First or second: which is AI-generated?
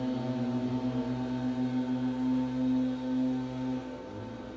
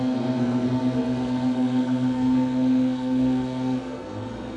second